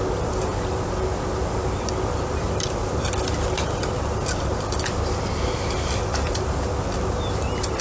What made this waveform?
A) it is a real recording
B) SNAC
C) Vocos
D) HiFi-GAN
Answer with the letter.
A